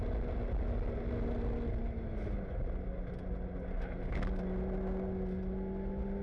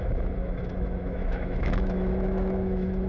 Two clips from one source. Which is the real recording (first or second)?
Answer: first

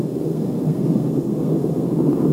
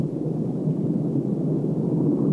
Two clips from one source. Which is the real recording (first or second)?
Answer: second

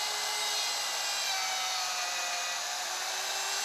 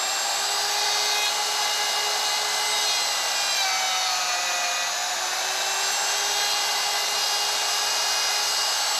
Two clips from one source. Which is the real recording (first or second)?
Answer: second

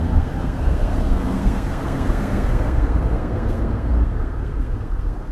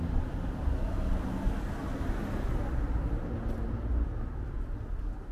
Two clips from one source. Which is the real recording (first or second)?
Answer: second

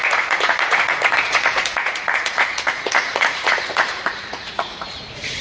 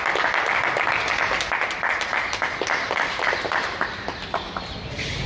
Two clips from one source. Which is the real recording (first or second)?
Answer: second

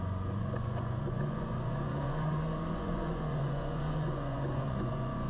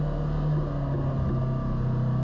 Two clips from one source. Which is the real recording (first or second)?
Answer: second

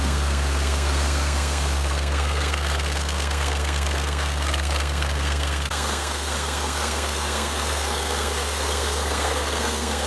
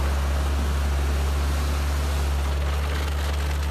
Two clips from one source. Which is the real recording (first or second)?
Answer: second